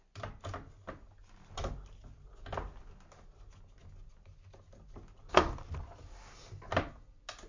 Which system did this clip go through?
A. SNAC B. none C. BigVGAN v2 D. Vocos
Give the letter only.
B